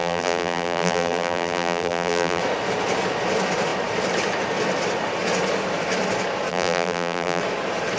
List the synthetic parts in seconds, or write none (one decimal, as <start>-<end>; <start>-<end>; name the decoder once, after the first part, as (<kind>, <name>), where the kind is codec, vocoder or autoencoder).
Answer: 0.0-2.4 (vocoder, BigVGAN v2); 6.5-7.4